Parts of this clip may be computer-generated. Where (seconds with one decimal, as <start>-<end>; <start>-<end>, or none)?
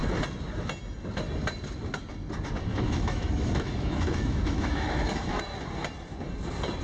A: 2.7-5.4